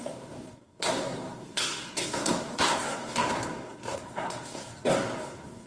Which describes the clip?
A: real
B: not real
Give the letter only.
B